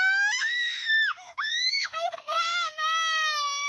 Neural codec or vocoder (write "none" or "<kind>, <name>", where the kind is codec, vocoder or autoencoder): autoencoder, DAC-VAE